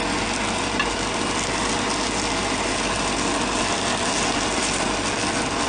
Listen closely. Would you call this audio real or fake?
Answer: real